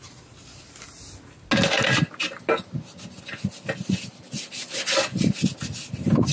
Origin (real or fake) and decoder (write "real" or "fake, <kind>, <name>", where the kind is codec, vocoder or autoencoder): real